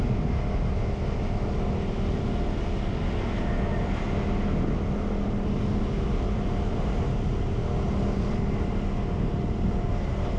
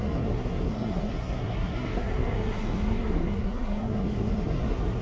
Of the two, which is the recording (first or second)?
first